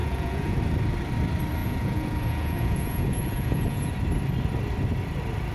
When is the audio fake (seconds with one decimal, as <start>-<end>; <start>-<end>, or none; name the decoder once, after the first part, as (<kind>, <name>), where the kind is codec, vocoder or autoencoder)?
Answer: 0.0-0.6 (vocoder, Vocos); 1.6-3.9